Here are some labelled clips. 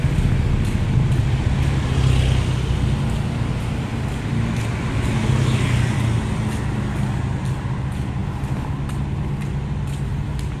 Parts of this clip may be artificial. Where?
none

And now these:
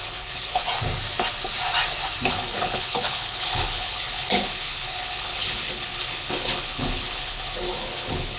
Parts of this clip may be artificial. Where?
0.0-0.6 (codec, HILCodec); 2.3-8.4